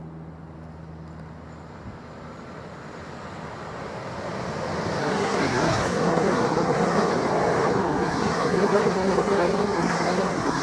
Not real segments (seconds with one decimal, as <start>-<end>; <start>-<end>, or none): 5.0-7.1; 7.7-10.6